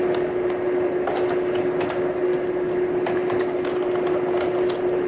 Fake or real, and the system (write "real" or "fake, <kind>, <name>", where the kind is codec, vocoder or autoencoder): real